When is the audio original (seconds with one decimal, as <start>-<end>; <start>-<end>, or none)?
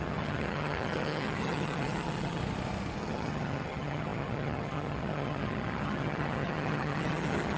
2.4-3.0